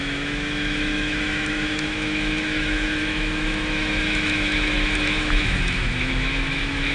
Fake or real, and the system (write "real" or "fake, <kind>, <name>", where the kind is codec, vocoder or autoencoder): fake, autoencoder, DAC-VAE